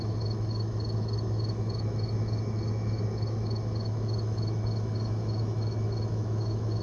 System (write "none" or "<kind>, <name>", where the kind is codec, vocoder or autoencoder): autoencoder, DAC-VAE